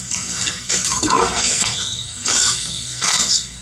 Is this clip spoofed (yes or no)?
yes